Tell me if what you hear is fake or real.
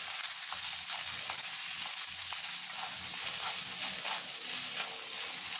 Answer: real